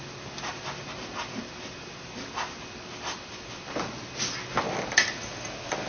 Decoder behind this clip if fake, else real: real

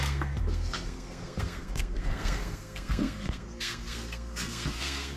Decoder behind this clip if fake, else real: fake, codec, SNAC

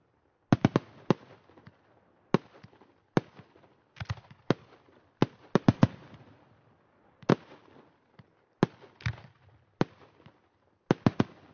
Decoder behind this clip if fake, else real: real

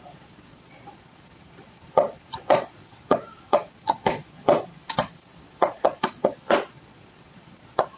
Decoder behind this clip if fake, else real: fake, vocoder, Vocos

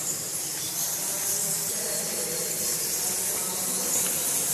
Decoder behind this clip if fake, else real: real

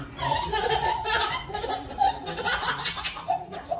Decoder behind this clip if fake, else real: fake, vocoder, BigVGAN v2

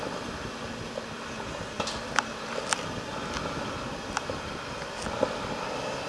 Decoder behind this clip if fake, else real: real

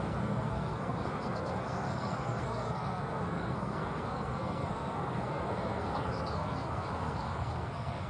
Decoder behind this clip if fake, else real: fake, codec, SNAC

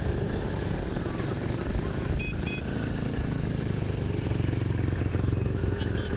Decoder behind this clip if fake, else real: real